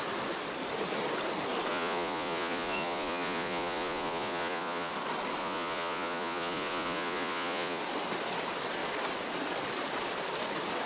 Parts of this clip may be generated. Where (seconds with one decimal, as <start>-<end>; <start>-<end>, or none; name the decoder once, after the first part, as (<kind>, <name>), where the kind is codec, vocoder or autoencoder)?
1.7-4.9 (vocoder, Vocos); 5.4-7.8